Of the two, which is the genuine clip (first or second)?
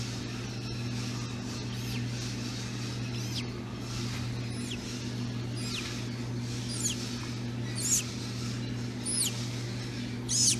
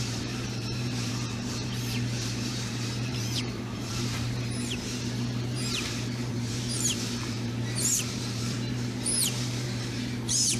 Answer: first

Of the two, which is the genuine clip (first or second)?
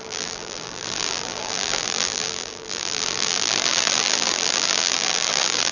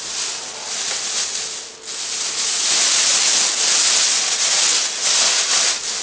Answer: second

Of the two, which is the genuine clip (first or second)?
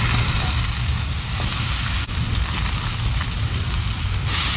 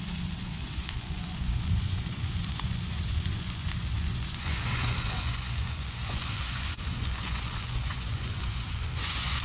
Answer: first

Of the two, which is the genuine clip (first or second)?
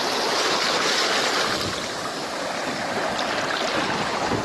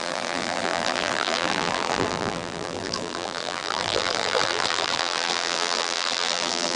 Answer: first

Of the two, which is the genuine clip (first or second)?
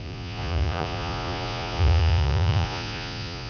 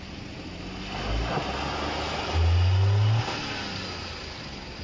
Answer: second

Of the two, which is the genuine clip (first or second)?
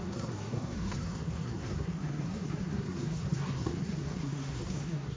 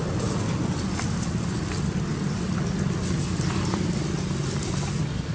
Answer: second